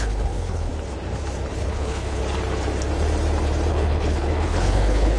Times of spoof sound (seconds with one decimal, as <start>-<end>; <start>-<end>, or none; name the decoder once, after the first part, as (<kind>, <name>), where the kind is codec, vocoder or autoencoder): 0.0-0.7 (codec, HILCodec); 1.5-2.2; 3.7-5.2